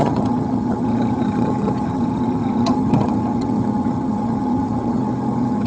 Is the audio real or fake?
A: fake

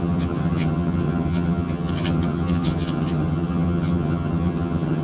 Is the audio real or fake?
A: fake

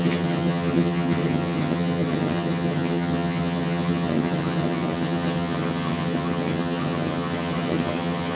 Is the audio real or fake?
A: fake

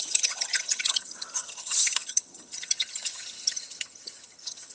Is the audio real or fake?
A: fake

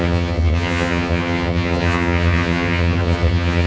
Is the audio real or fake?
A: fake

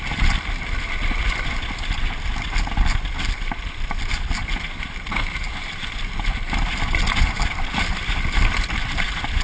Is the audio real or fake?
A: real